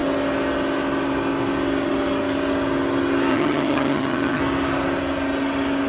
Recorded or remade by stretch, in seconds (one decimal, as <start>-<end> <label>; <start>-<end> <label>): 0.0-3.3 recorded; 3.3-4.4 remade; 4.4-5.9 recorded